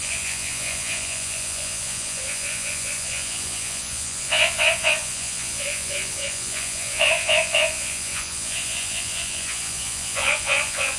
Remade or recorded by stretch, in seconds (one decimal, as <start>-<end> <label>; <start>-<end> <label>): 0.0-11.0 remade